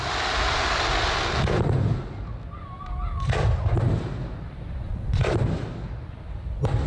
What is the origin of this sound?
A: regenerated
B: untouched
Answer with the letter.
B